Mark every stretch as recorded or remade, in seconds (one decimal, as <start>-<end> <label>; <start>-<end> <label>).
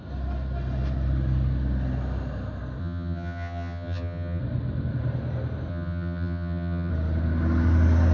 0.0-2.8 recorded; 2.8-4.4 remade; 4.4-5.7 recorded; 5.7-6.9 remade; 6.9-8.1 recorded